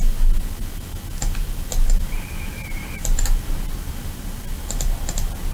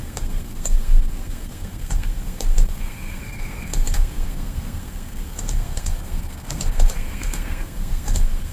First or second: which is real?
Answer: first